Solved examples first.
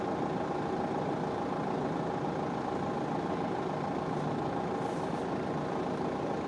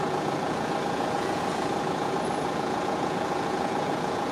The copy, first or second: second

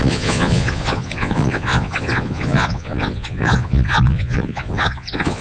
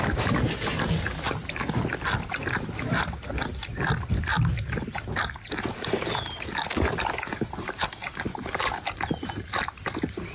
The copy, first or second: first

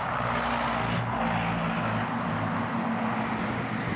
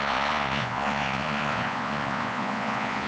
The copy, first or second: second